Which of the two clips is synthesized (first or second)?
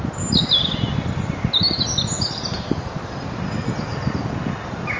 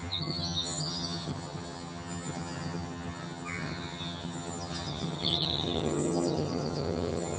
second